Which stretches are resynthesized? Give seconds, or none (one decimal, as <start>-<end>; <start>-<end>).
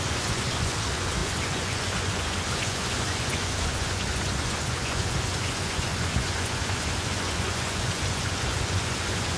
0.0-9.4